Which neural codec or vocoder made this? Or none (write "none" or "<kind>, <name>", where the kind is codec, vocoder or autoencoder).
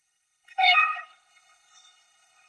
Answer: codec, HILCodec